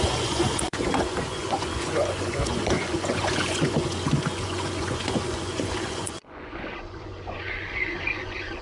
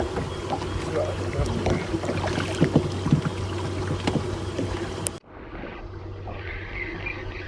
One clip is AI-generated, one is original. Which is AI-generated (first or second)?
first